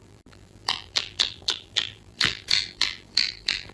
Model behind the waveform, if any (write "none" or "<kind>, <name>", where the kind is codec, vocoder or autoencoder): vocoder, BigVGAN v2